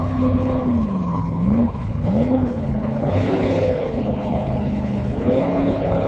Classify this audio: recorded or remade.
remade